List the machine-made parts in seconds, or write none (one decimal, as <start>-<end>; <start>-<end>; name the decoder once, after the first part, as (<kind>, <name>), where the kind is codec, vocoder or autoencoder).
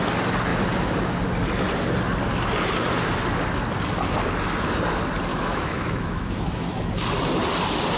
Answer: 5.3-6.9 (autoencoder, DAC-VAE)